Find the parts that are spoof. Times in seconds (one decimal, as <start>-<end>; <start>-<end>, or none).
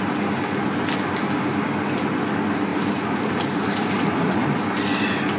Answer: 2.7-4.6